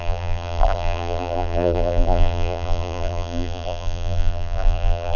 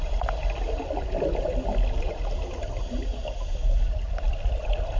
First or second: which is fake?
first